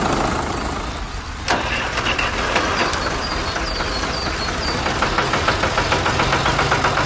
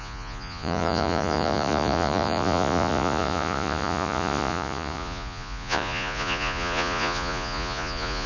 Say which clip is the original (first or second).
first